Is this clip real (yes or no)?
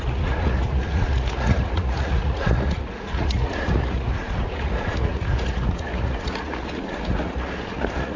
no